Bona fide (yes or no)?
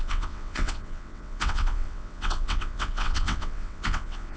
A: no